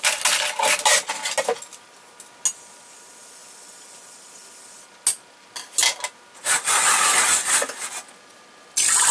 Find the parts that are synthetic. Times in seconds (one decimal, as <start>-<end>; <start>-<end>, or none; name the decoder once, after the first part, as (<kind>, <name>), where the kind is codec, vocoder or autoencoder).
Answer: none